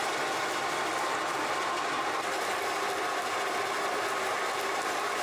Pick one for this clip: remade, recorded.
remade